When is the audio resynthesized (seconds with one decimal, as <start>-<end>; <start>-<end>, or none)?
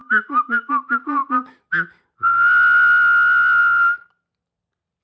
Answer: 0.0-0.7